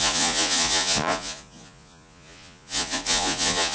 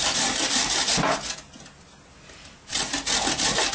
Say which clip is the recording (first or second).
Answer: second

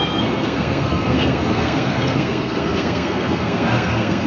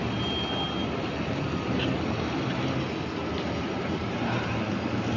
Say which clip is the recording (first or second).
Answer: second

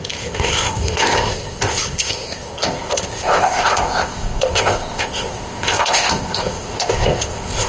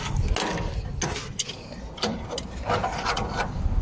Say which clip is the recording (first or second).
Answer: second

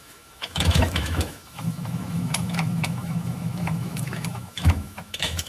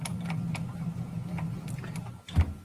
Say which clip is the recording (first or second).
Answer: second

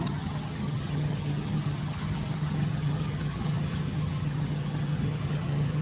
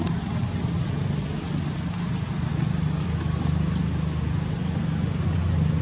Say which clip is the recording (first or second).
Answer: second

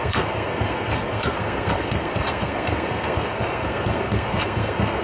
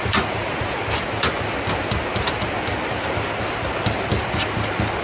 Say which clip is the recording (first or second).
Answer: second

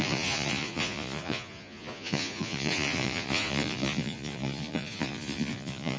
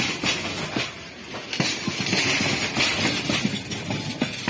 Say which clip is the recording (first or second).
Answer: second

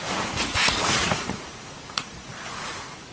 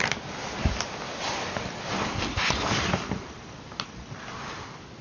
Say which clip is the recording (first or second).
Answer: second